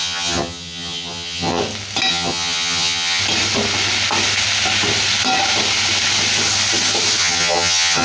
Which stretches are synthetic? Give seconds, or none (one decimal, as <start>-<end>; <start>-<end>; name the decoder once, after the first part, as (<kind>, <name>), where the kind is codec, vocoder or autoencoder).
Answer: 0.0-1.6 (vocoder, HiFi-GAN); 2.1-3.2; 7.2-8.0